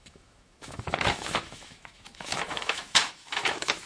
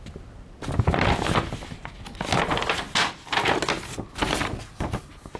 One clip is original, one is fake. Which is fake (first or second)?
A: first